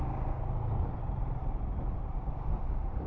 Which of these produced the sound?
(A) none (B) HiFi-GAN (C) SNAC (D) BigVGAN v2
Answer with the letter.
A